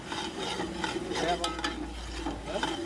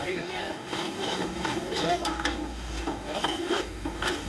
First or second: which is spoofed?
second